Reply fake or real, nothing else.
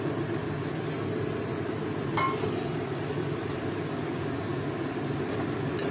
real